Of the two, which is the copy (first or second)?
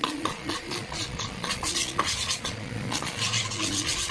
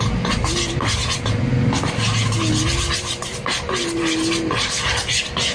first